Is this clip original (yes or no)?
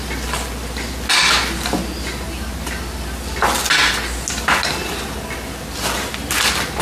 yes